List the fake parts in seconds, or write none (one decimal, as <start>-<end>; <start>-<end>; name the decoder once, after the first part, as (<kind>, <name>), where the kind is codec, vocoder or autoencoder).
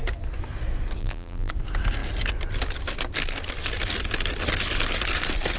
1.0-1.5 (vocoder, BigVGAN v2)